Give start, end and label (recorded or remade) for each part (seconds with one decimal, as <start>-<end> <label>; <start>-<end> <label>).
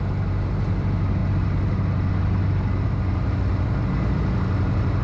0.0-5.0 recorded